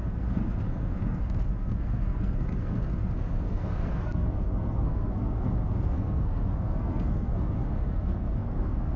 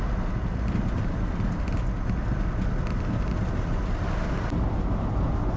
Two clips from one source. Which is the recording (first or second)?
second